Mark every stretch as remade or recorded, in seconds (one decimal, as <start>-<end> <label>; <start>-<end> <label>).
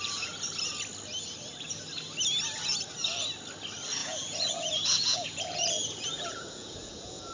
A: 0.0-4.0 recorded; 4.0-7.3 remade